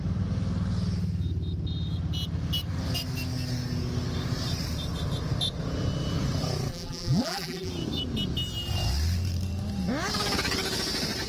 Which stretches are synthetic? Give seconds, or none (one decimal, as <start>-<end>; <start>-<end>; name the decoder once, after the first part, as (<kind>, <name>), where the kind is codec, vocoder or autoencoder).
6.7-7.7 (vocoder, BigVGAN v2)